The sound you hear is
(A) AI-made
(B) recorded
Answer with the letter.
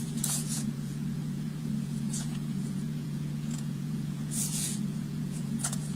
A